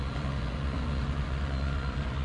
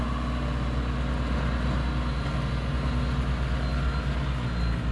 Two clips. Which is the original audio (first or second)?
second